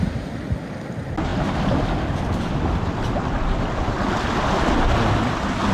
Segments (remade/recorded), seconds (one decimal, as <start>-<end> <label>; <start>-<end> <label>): 0.0-5.7 recorded